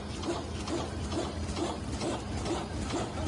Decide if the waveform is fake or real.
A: real